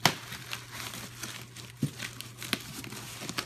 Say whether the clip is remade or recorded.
recorded